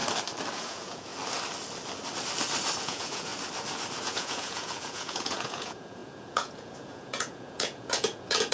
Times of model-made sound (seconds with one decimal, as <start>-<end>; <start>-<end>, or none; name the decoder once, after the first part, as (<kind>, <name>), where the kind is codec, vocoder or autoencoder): 0.6-1.1 (vocoder, Vocos); 2.8-3.3; 4.0-8.5